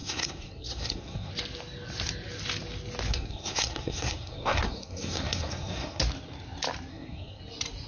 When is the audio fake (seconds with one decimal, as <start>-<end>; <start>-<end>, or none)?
0.0-1.3; 3.1-6.0; 6.9-7.4